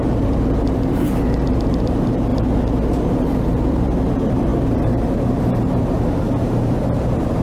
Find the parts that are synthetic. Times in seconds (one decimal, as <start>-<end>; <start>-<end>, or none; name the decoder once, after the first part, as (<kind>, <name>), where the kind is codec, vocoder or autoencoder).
0.0-2.3 (vocoder, BigVGAN v2); 3.3-7.4

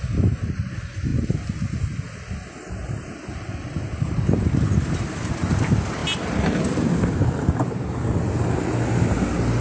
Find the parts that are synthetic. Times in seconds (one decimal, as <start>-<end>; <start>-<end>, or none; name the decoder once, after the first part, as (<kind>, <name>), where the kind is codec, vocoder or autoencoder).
1.1-2.3 (vocoder, BigVGAN v2); 2.8-5.4

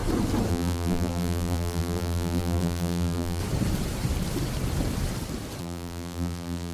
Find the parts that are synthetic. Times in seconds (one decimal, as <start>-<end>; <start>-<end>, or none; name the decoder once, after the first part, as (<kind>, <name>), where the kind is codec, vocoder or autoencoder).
0.5-3.4 (vocoder, BigVGAN v2); 5.6-6.7

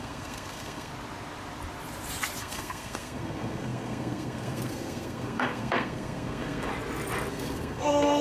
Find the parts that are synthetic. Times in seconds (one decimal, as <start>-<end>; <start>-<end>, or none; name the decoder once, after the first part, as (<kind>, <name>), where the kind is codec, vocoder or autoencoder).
0.0-0.9 (codec, SNAC); 2.4-6.7; 7.3-8.2

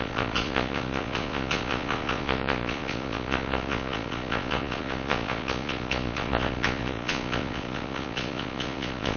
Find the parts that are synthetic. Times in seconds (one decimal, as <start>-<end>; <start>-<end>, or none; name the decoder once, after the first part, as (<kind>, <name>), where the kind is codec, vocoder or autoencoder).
0.0-9.2 (vocoder, Vocos)